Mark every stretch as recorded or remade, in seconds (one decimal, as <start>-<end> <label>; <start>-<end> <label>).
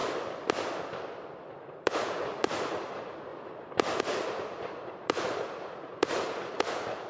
0.0-1.6 recorded; 1.6-3.3 remade; 3.3-4.0 recorded; 4.0-7.1 remade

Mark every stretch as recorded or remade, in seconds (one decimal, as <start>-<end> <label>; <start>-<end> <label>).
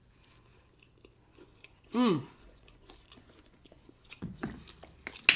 0.0-1.3 recorded; 1.3-4.5 remade; 4.5-5.4 recorded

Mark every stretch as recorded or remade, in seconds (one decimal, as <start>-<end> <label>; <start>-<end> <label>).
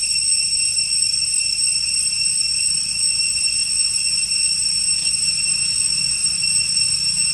0.0-7.3 recorded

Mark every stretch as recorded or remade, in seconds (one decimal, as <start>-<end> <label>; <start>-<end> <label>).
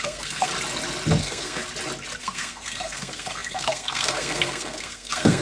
0.0-0.5 remade; 0.5-1.2 recorded; 1.2-1.6 remade; 1.6-2.2 recorded; 2.2-5.4 remade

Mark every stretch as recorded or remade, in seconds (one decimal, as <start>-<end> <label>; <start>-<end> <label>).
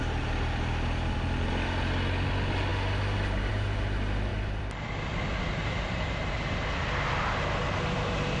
0.0-4.3 recorded; 4.3-6.1 remade; 6.1-8.4 recorded